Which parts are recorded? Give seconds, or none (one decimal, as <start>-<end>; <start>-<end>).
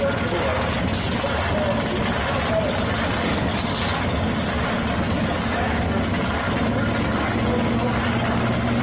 0.0-8.8